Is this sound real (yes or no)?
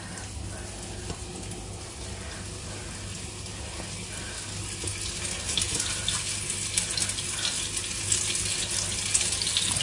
yes